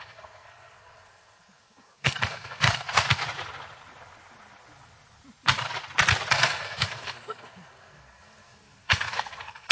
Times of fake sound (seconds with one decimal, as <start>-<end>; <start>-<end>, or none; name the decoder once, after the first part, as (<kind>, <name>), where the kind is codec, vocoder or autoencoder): 0.0-3.2 (codec, SNAC); 6.3-9.7